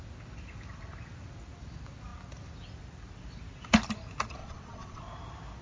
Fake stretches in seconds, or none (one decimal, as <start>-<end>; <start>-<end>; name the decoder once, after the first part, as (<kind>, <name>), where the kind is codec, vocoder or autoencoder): 4.4-5.0 (vocoder, WaveNeXt)